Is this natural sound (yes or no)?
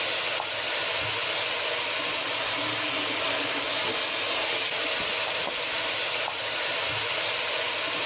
yes